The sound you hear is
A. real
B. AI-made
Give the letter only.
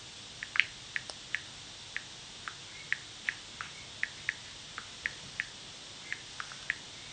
A